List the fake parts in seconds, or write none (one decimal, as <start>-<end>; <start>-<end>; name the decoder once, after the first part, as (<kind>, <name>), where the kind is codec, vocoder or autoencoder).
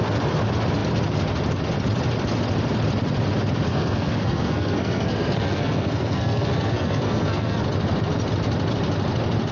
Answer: 3.7-7.6 (codec, SNAC)